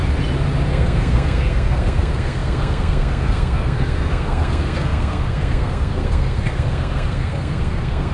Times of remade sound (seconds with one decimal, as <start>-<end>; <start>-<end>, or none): 0.7-8.1